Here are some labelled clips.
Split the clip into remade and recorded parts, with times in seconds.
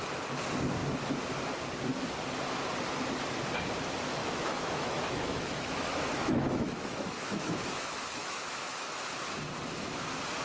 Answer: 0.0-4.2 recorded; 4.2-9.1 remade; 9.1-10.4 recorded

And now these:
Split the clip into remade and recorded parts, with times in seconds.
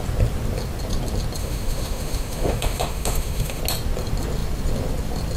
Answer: 0.0-1.4 recorded; 1.4-3.6 remade; 3.6-5.4 recorded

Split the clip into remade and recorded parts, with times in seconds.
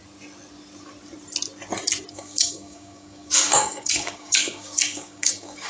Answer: 0.0-2.1 recorded; 2.1-5.7 remade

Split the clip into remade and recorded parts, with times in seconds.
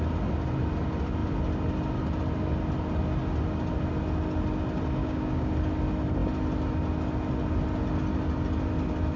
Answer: 0.0-5.0 recorded; 5.0-5.5 remade; 5.5-9.2 recorded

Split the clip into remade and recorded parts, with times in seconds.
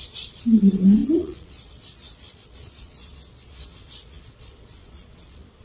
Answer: 0.0-5.6 remade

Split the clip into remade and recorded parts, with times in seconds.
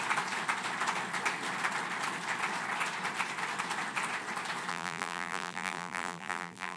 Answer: 0.0-4.7 recorded; 4.7-6.8 remade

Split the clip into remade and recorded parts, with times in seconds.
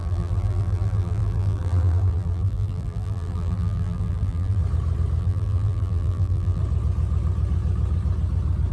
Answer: 0.0-4.6 remade; 4.6-5.2 recorded; 5.2-6.6 remade; 6.6-8.7 recorded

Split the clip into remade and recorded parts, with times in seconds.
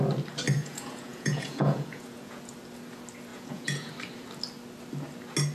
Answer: 0.0-0.6 recorded; 0.6-2.4 remade; 2.4-3.3 recorded; 3.3-3.9 remade; 3.9-5.5 recorded